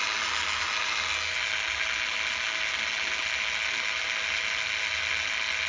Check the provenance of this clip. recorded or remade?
recorded